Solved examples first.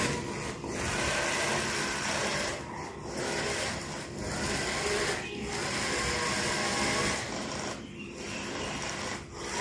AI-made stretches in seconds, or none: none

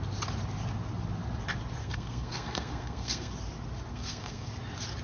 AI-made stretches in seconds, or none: 1.8-3.3 (codec, SNAC); 3.9-4.5

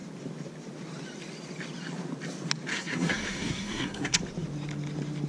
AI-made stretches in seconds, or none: 2.7-4.2 (codec, SNAC)